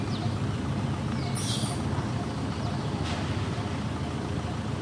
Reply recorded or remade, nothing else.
recorded